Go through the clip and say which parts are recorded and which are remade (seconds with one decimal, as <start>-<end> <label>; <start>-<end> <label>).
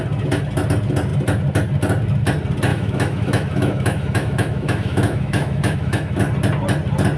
0.0-2.7 recorded; 2.7-6.2 remade; 6.2-7.2 recorded